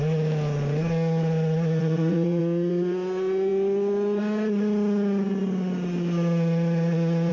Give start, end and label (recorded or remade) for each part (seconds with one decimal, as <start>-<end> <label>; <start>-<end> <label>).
0.0-1.8 recorded; 1.8-2.4 remade; 2.4-7.3 recorded